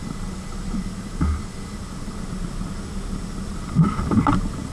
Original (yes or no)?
yes